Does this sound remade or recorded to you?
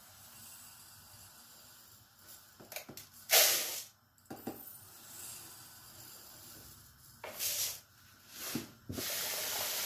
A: recorded